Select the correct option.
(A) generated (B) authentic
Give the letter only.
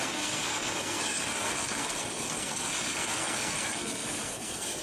A